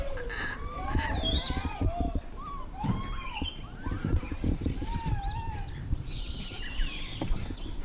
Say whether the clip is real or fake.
fake